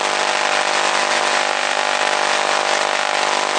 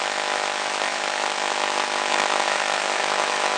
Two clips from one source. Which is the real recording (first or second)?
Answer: first